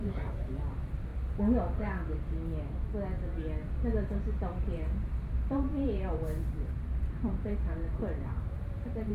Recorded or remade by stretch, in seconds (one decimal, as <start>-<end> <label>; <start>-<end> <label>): 0.0-1.1 remade; 1.1-4.6 recorded; 4.6-9.1 remade